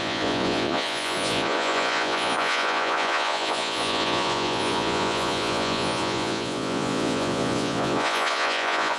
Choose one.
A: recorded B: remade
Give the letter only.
B